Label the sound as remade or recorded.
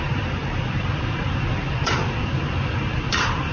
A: remade